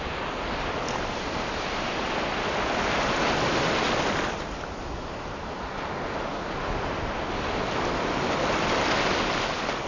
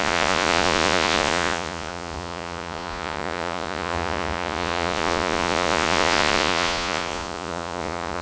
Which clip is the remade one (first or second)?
second